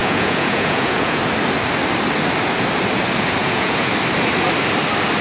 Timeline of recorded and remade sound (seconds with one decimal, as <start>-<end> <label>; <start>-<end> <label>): 0.0-1.2 remade; 1.2-3.4 recorded; 3.4-3.9 remade; 3.9-5.2 recorded